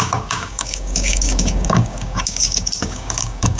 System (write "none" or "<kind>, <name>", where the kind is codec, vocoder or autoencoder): codec, DAC